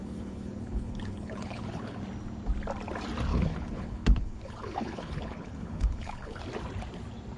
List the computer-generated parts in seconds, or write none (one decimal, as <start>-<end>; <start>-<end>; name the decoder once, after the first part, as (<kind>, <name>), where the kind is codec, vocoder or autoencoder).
0.0-2.0 (codec, HILCodec); 3.3-6.4